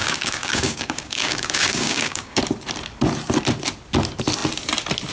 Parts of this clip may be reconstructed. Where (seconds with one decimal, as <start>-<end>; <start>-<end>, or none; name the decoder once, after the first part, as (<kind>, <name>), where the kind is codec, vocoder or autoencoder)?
0.0-2.4 (codec, DAC)